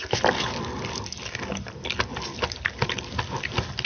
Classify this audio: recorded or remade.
recorded